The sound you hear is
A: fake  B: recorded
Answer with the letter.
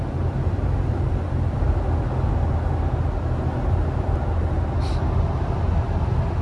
B